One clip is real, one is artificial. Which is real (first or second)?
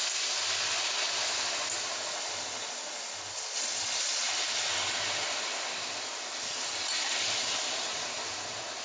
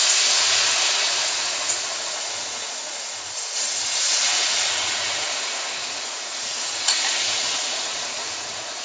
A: first